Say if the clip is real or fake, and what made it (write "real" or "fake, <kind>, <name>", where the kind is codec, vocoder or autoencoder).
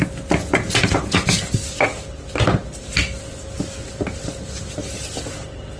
real